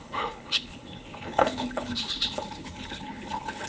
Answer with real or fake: fake